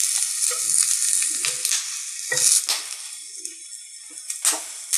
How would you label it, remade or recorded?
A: recorded